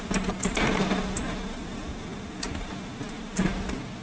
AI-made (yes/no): no